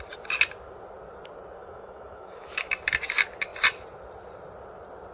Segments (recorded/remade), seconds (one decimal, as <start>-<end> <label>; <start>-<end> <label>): 0.0-1.6 recorded; 1.6-2.7 remade; 2.7-5.1 recorded